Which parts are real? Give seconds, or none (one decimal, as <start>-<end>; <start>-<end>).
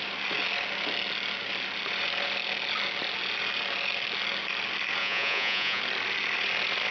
0.0-5.0; 5.8-6.9